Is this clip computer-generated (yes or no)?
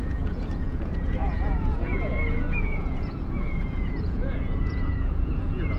yes